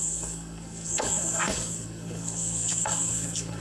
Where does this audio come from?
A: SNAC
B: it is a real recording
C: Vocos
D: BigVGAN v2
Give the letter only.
A